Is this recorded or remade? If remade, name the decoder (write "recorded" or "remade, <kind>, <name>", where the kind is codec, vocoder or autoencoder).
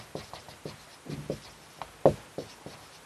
recorded